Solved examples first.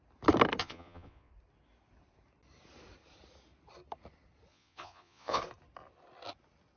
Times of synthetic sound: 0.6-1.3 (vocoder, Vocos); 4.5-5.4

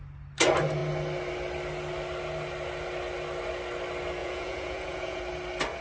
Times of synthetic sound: 4.2-5.2 (vocoder, Vocos)

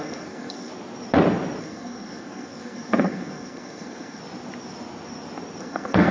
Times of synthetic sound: 0.0-0.7 (codec, SNAC); 1.6-4.2; 5.6-6.1